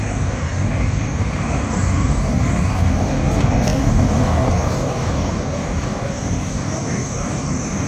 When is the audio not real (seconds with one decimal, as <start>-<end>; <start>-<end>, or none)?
0.0-7.9